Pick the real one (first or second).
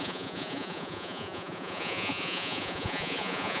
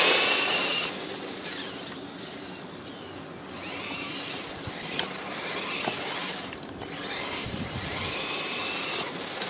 second